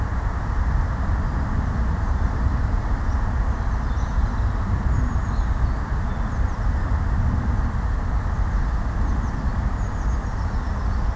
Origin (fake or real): real